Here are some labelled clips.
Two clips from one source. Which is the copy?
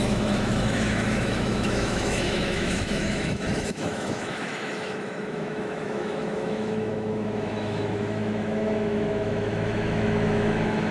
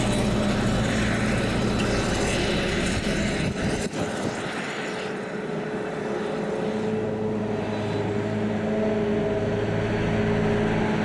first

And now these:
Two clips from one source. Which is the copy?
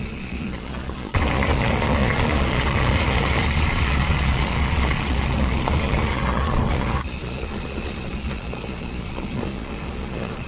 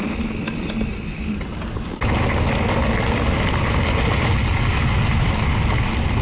first